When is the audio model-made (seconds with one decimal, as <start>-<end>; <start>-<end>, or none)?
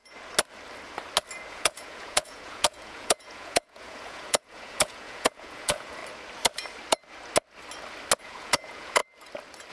1.5-6.0; 8.2-9.0